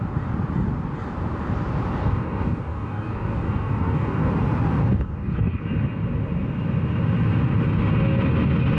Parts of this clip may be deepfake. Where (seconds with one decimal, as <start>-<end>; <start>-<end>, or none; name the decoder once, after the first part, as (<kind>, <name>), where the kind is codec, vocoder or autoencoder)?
2.0-4.3 (codec, DAC); 4.8-5.6